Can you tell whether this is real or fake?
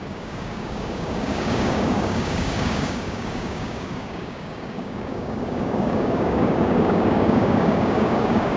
fake